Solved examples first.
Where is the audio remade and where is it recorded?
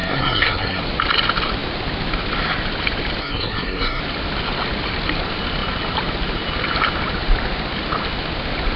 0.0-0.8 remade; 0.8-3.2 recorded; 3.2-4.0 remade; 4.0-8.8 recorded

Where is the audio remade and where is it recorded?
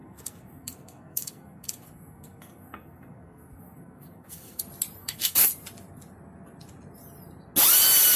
0.0-4.6 remade; 4.6-5.0 recorded; 5.0-5.5 remade; 5.5-8.2 recorded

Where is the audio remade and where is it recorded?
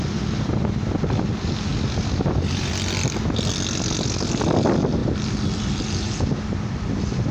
0.0-7.3 recorded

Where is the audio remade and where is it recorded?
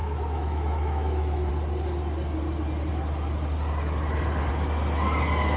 0.0-1.5 remade; 1.5-5.6 recorded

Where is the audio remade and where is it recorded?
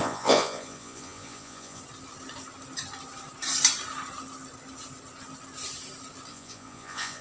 0.0-1.8 remade; 1.8-6.3 recorded; 6.3-7.2 remade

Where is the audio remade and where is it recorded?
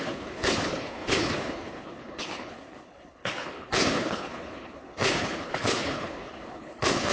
0.0-7.1 remade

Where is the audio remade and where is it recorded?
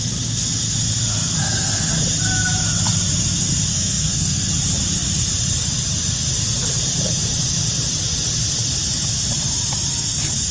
0.0-1.4 recorded; 1.4-1.9 remade; 1.9-3.7 recorded; 3.7-4.5 remade; 4.5-10.5 recorded